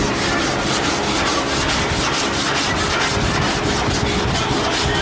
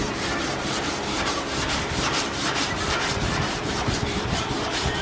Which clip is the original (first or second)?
first